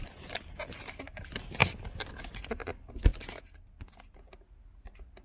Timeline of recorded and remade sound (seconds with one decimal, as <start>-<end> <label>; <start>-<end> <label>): 0.0-5.2 recorded